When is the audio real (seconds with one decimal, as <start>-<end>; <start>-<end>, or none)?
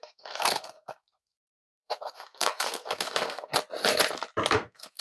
3.5-4.5